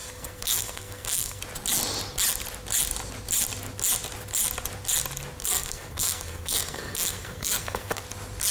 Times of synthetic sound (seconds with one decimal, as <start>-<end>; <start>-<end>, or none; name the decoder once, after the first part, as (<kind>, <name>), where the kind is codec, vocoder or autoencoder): 0.0-1.4 (codec, SNAC); 5.4-8.0